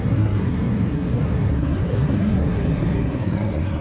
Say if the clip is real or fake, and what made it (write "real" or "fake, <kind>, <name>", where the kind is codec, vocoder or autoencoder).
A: fake, codec, SNAC